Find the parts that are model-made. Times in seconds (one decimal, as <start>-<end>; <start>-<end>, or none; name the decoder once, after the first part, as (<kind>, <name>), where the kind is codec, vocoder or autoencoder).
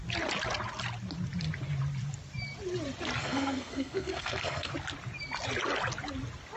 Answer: 3.2-4.7 (codec, SNAC)